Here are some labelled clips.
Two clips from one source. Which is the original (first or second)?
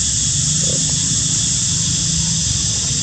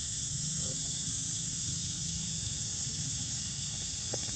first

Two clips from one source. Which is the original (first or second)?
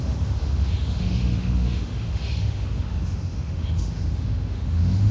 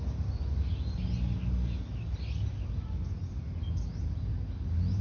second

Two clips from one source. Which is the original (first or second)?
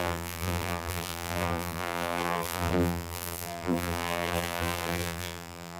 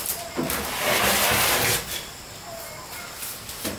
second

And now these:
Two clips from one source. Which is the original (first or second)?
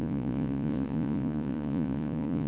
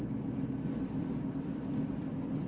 second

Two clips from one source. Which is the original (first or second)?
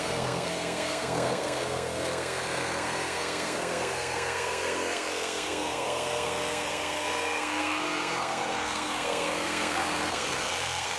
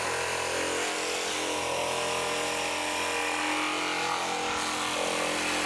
second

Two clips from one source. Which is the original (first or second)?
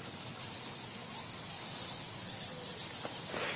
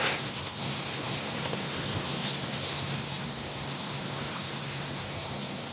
first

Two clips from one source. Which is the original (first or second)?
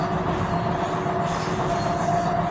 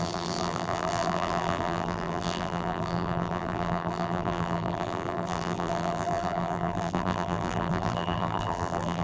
first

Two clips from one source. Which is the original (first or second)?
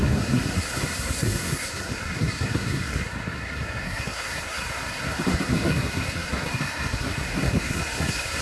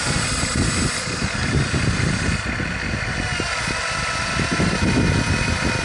second